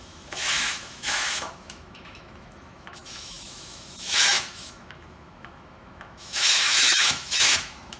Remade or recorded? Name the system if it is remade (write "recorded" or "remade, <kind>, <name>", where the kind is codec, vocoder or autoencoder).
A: remade, autoencoder, DAC-VAE